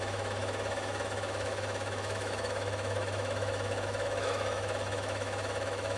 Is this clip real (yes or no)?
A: no